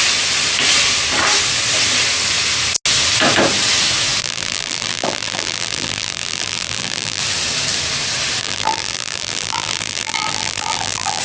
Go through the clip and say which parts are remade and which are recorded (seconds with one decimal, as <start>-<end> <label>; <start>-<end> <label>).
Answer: 0.0-4.2 recorded; 4.2-7.2 remade; 7.2-8.4 recorded; 8.4-11.2 remade